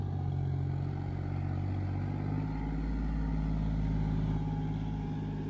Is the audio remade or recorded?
recorded